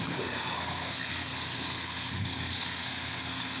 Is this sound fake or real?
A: fake